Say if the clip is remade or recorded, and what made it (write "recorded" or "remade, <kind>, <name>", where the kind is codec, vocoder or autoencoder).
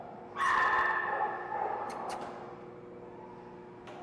recorded